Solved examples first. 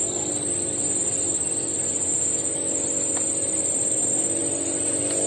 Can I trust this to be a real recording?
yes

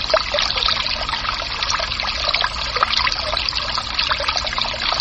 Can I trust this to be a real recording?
yes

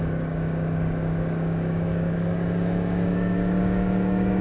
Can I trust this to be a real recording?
no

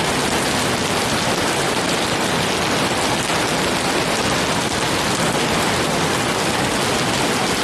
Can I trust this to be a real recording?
yes